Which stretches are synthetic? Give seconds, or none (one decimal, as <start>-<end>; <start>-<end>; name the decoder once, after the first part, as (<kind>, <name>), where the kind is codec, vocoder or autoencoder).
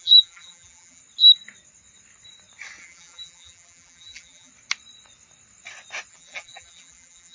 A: 0.0-1.0 (vocoder, BigVGAN v2); 2.8-4.5; 6.1-7.3